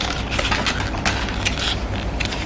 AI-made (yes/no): no